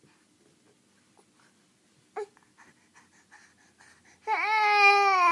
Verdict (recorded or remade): recorded